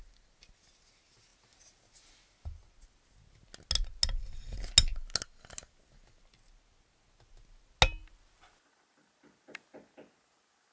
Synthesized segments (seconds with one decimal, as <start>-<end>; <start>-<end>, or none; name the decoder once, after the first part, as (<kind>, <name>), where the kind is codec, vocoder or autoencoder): none